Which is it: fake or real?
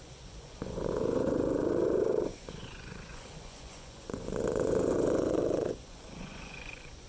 fake